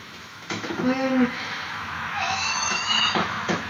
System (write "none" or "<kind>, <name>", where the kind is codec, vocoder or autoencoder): autoencoder, DAC-VAE